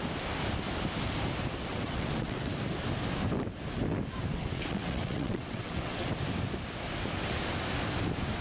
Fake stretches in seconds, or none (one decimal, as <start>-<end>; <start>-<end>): 1.7-2.5; 4.3-6.1